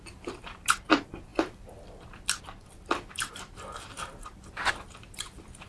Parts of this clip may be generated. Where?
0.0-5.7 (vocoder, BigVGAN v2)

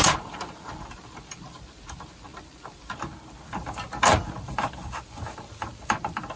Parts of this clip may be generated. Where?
none

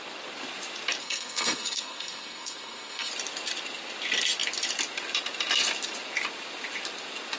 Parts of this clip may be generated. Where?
1.0-3.1 (codec, SNAC)

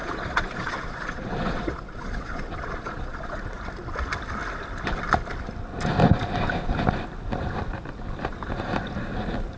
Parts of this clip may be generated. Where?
0.0-3.6 (vocoder, Vocos)

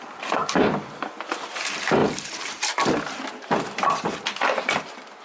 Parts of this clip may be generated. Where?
none

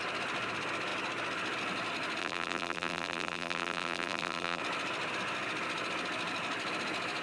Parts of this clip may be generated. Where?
2.2-4.6 (vocoder, BigVGAN v2)

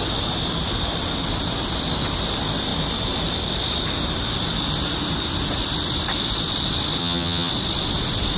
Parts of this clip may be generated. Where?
7.0-7.5 (vocoder, HiFi-GAN)

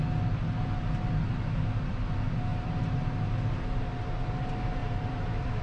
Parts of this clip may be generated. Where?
2.5-3.1 (vocoder, BigVGAN v2); 4.8-5.6